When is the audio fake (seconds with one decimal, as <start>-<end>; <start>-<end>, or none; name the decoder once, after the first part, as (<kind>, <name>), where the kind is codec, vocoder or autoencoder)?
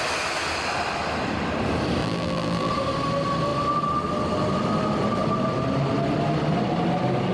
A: 2.0-2.7 (vocoder, BigVGAN v2)